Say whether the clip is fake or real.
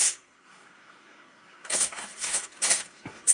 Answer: fake